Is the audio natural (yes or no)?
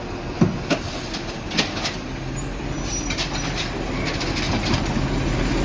yes